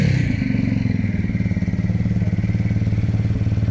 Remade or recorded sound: recorded